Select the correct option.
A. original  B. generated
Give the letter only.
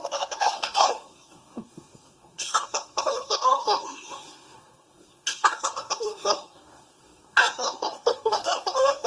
B